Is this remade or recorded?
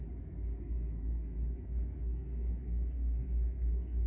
remade